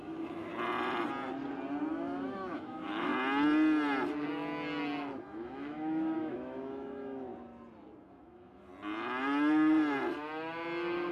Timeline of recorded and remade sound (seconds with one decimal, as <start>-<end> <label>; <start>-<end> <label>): 0.0-0.5 remade; 0.5-1.9 recorded; 1.9-3.1 remade; 3.1-5.2 recorded; 5.2-7.3 remade; 7.3-8.0 recorded; 8.0-8.7 remade; 8.7-11.1 recorded